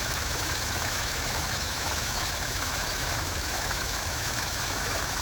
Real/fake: fake